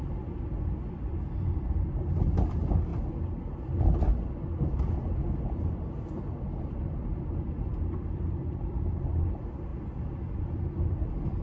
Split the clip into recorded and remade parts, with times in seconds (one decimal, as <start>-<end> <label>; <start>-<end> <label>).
0.0-2.9 remade; 2.9-5.4 recorded; 5.4-9.7 remade; 9.7-10.3 recorded; 10.3-11.4 remade